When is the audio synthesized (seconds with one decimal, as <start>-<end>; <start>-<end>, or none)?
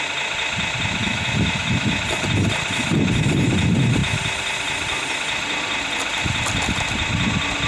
1.0-2.0